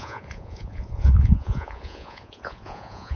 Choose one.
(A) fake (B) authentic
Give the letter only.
A